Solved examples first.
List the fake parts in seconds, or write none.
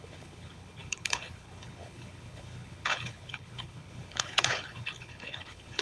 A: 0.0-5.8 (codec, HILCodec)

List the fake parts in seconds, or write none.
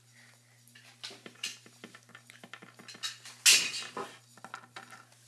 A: none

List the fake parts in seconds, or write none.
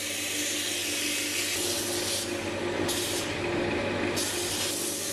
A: none